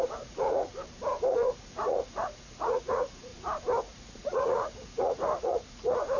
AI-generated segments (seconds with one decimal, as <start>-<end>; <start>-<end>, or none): 0.0-0.7; 1.3-3.3; 3.8-6.2